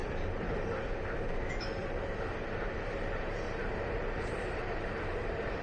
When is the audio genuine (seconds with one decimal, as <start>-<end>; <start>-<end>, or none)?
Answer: 0.8-1.8